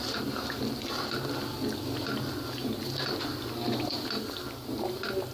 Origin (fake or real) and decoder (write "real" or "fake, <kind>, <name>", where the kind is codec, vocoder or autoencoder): real